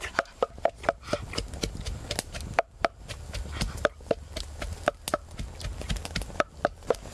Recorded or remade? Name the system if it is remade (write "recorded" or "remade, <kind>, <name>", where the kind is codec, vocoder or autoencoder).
recorded